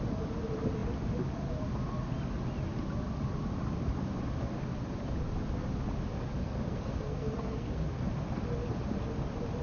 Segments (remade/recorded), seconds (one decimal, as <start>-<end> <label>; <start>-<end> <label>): 0.0-6.4 recorded; 6.4-8.0 remade; 8.0-9.6 recorded